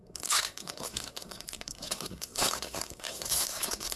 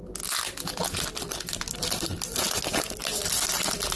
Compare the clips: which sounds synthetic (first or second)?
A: first